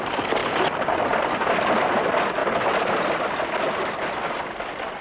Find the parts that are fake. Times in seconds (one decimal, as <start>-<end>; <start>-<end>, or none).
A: none